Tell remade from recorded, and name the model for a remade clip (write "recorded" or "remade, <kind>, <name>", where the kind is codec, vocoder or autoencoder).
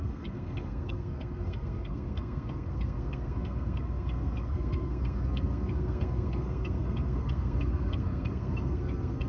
remade, codec, SNAC